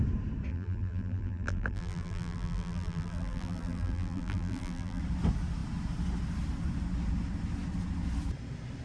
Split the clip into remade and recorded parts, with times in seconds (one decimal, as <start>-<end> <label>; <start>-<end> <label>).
0.0-0.5 recorded; 0.5-5.0 remade; 5.0-8.8 recorded